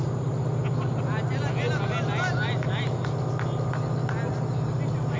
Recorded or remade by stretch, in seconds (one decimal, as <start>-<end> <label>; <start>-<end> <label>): 0.0-5.2 recorded